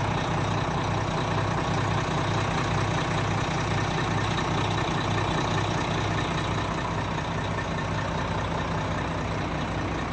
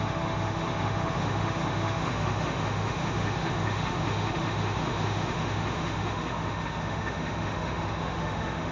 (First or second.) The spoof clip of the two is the second